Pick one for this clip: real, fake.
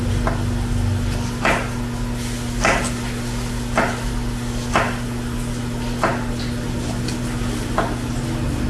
real